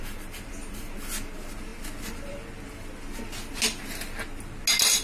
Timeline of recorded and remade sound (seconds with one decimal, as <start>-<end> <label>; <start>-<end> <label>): 0.0-5.0 recorded